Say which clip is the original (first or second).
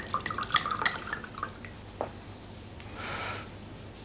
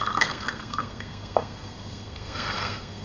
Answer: first